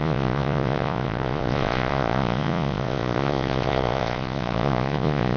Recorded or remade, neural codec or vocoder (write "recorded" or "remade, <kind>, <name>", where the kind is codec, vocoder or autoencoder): remade, vocoder, Vocos